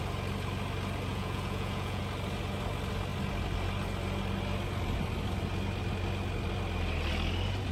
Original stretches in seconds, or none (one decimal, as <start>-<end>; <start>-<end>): 0.0-1.1; 2.0-7.7